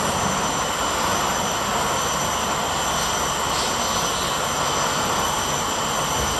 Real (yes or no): yes